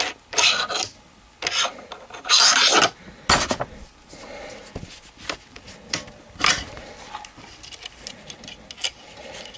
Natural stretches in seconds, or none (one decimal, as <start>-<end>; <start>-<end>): 0.0-9.6